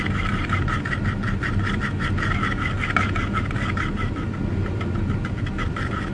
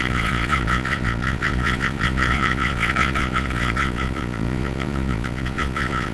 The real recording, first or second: first